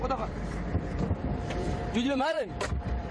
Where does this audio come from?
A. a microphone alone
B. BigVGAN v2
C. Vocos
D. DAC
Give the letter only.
B